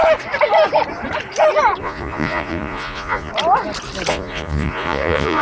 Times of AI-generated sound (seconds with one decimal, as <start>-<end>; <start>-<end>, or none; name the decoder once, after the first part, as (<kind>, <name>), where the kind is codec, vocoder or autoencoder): 1.8-3.3 (vocoder, Vocos); 4.1-5.4

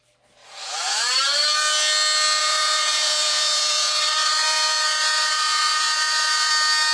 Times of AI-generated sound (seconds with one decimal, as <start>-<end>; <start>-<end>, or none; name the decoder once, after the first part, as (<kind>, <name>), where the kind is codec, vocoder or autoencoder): 0.4-1.0 (vocoder, Vocos); 2.4-6.5